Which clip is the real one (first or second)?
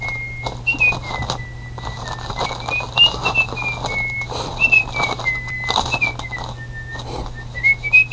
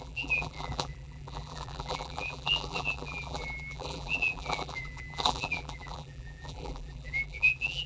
first